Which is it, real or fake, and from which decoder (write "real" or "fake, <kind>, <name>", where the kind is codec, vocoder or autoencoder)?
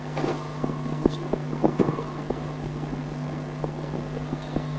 fake, codec, SNAC